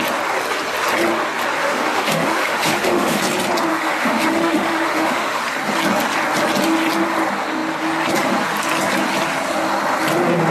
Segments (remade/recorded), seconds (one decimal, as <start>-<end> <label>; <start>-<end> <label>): 0.0-1.6 recorded; 1.6-3.2 remade; 3.2-3.7 recorded; 3.7-5.4 remade; 5.4-10.5 recorded

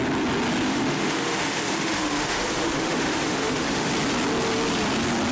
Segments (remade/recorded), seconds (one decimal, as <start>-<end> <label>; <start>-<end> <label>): 0.0-0.7 recorded; 0.7-3.9 remade; 3.9-5.3 recorded